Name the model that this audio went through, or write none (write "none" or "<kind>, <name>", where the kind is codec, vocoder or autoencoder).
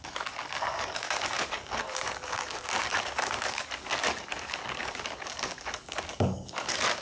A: codec, DAC